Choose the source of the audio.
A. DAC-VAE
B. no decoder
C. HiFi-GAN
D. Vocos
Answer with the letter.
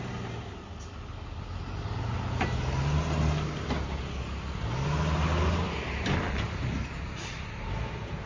B